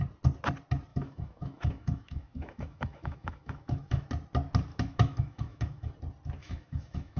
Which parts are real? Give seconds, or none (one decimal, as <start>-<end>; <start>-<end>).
0.0-0.9; 4.1-4.7; 5.9-6.4